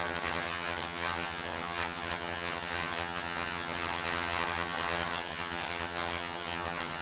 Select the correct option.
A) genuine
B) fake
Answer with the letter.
B